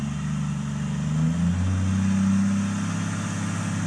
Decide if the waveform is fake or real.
real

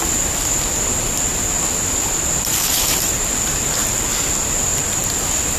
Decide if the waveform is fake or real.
real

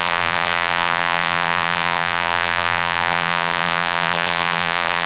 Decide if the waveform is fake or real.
fake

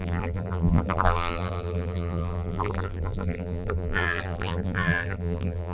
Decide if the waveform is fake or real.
fake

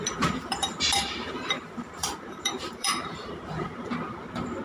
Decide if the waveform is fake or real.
fake